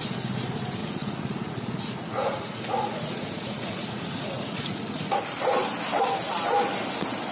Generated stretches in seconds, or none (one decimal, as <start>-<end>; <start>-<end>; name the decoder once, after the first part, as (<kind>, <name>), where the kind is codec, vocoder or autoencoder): 0.8-5.2 (vocoder, Vocos)